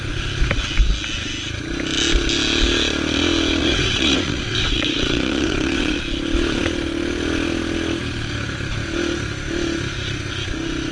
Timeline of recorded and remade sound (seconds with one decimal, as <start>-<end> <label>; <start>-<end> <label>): 0.0-3.6 recorded; 3.6-6.0 remade; 6.0-10.9 recorded